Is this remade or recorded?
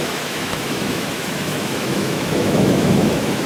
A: remade